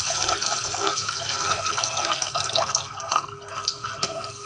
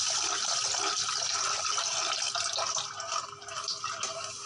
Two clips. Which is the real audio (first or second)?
second